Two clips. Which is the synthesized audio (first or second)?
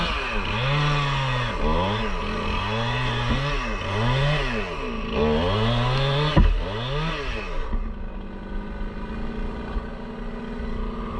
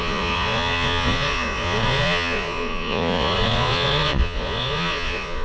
second